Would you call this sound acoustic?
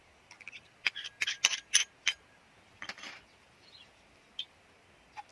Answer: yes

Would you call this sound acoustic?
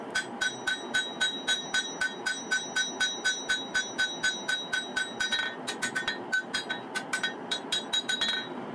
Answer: yes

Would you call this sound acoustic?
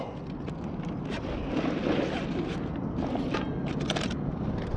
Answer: yes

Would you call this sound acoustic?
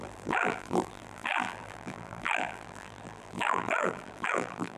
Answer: no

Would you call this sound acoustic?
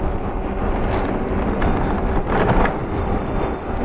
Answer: yes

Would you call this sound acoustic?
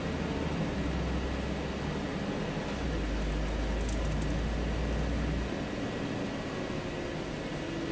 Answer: yes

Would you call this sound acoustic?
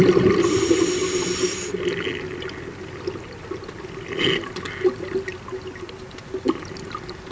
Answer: yes